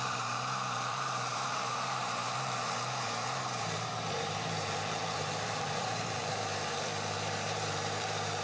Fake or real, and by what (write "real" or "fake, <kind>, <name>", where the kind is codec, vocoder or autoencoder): fake, vocoder, BigVGAN v2